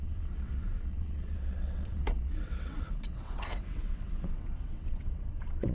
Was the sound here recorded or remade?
remade